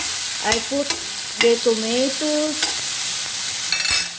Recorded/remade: recorded